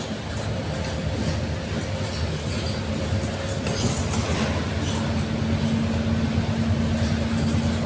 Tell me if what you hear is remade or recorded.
recorded